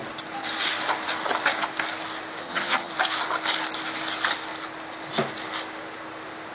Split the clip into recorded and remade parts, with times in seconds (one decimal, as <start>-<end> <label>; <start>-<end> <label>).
0.0-2.4 recorded; 2.4-2.9 remade; 2.9-6.5 recorded